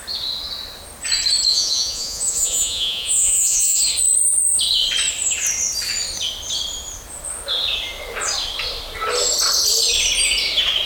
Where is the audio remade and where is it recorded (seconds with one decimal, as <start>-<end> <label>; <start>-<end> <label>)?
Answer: 0.0-1.5 recorded; 1.5-3.8 remade; 3.8-10.9 recorded